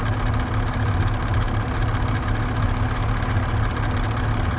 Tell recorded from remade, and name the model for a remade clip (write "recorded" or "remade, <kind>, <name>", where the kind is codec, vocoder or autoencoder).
recorded